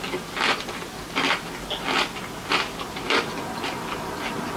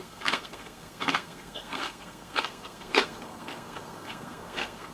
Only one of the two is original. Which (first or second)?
first